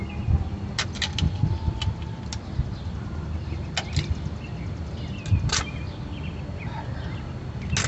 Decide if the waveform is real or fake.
real